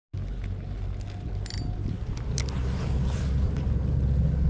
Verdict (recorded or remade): recorded